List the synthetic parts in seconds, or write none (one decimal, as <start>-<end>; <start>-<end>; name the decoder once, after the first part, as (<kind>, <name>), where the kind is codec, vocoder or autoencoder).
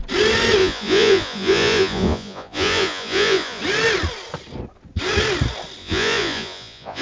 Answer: 0.6-3.6 (vocoder, Vocos); 5.8-7.0